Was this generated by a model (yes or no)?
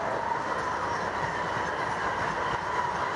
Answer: no